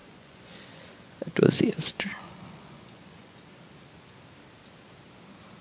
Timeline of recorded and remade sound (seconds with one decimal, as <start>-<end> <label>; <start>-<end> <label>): 0.0-3.4 remade; 3.4-5.6 recorded